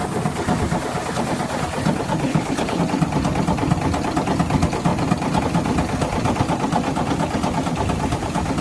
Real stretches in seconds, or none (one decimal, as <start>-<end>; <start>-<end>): 0.0-2.3; 2.8-8.6